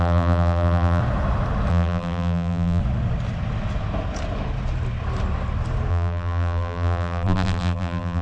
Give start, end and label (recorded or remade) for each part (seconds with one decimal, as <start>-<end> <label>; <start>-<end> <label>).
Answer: 0.0-1.0 remade; 1.0-1.7 recorded; 1.7-2.8 remade; 2.8-5.9 recorded; 5.9-8.2 remade